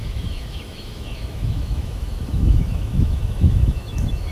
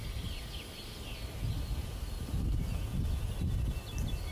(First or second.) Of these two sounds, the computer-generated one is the first